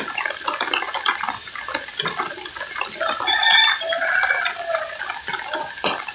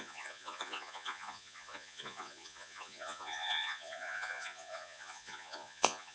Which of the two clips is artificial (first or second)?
second